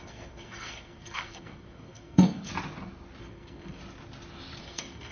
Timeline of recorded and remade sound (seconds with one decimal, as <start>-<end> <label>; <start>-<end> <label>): 0.0-2.5 remade; 2.5-3.2 recorded; 3.2-3.8 remade; 3.8-4.6 recorded; 4.6-5.1 remade